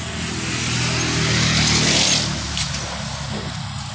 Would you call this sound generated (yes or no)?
no